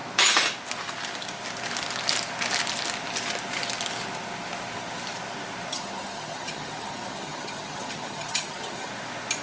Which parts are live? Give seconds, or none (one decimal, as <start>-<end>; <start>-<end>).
0.0-5.7; 8.9-9.4